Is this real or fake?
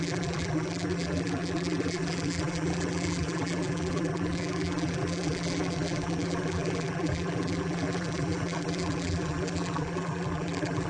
fake